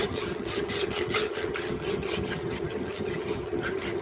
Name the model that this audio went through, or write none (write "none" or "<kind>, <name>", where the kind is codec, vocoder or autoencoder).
vocoder, HiFi-GAN